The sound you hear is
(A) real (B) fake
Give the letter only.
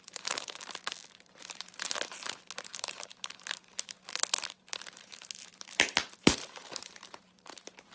B